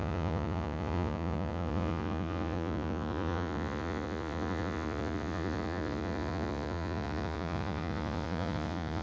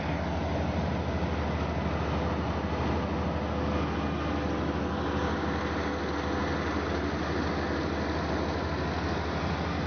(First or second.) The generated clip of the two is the first